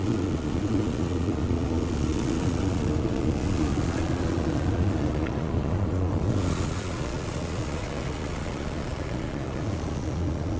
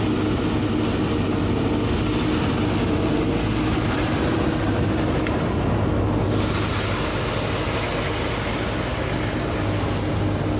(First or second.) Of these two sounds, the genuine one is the second